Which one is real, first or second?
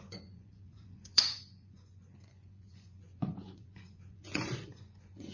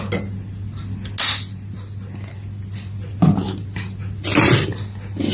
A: second